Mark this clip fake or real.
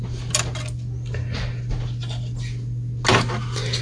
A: real